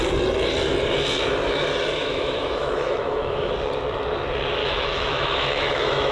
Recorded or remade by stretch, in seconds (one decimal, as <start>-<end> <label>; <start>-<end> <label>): 0.0-2.0 recorded; 2.0-3.5 remade; 3.5-4.6 recorded; 4.6-6.1 remade